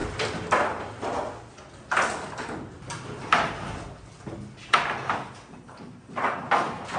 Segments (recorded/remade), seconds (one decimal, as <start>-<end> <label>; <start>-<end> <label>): 0.0-1.0 remade; 1.0-7.0 recorded